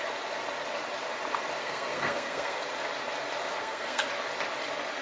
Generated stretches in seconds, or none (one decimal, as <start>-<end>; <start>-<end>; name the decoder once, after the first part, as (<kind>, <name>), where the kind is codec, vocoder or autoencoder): 1.6-2.6 (codec, SNAC); 3.6-4.1